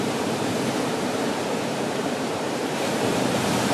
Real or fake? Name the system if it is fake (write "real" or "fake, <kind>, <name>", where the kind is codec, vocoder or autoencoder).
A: fake, vocoder, BigVGAN v2